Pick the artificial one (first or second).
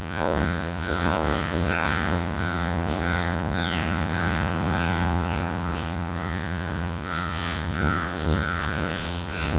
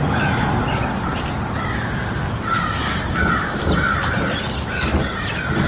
first